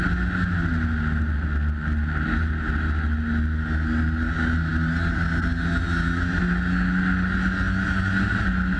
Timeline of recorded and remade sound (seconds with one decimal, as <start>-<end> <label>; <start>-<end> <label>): 0.0-8.8 recorded